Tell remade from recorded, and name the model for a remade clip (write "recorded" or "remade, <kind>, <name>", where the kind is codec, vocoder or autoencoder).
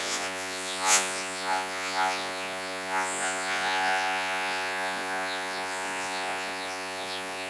remade, vocoder, Vocos